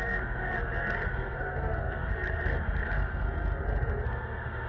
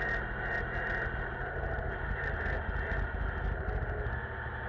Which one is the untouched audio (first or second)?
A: second